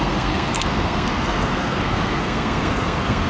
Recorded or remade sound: remade